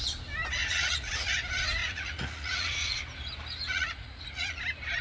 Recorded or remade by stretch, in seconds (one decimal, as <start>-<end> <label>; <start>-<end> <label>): 0.0-0.6 recorded; 0.6-1.3 remade; 1.3-1.8 recorded; 1.8-3.0 remade; 3.0-3.7 recorded; 3.7-4.6 remade; 4.6-5.0 recorded